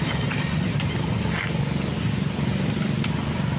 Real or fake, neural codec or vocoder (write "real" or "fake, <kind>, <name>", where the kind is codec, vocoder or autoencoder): real